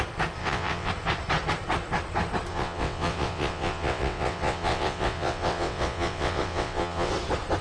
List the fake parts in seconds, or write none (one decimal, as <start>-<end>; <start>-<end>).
0.4-0.9; 2.5-7.1